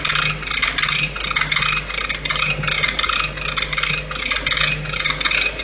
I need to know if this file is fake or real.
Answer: real